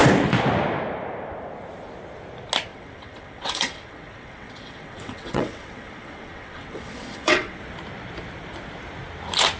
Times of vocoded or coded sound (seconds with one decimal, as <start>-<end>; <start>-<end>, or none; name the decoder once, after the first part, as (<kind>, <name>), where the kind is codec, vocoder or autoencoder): 2.7-7.6 (vocoder, WaveNeXt)